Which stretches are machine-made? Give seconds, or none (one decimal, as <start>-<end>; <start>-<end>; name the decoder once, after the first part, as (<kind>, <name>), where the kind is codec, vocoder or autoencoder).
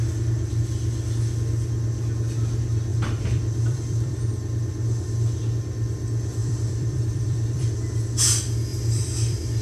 2.9-4.3 (vocoder, BigVGAN v2); 6.4-7.9; 8.7-9.6